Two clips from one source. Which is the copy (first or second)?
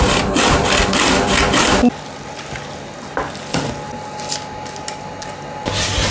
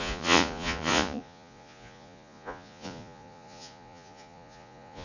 second